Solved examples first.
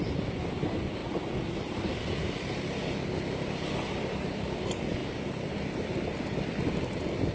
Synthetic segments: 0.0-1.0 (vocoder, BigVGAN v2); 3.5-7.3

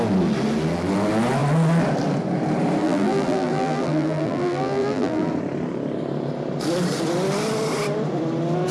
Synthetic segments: 2.8-5.3 (vocoder, BigVGAN v2)

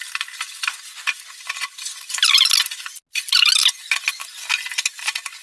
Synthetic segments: none

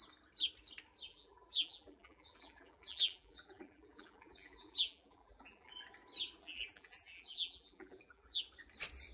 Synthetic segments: 1.1-5.7 (vocoder, BigVGAN v2); 6.4-8.4